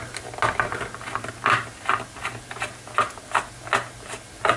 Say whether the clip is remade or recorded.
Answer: recorded